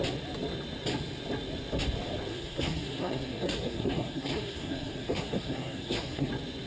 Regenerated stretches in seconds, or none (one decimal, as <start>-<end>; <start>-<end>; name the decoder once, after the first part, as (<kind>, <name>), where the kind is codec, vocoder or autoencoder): 2.3-6.3 (codec, SNAC)